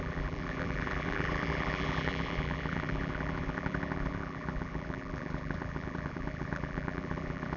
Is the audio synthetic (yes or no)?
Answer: yes